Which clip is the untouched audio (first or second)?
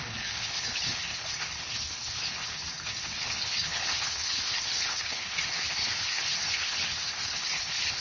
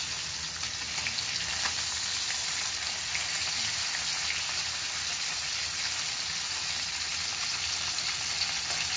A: second